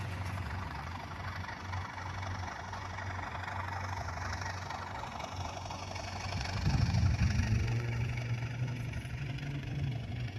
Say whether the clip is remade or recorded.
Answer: remade